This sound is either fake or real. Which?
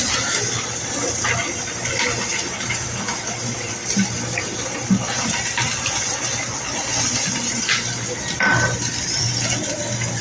fake